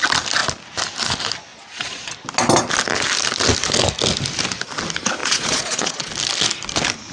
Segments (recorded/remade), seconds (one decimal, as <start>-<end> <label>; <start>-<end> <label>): 0.0-1.5 recorded; 1.5-2.1 remade; 2.1-5.2 recorded; 5.2-6.1 remade; 6.1-7.1 recorded